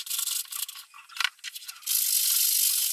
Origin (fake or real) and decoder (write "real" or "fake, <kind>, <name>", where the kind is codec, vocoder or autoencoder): real